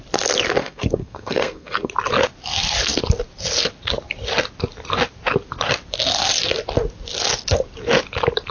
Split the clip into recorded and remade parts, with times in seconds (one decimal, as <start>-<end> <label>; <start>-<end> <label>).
0.0-0.6 recorded; 0.6-1.9 remade; 1.9-8.5 recorded